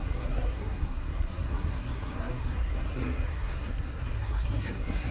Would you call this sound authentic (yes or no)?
no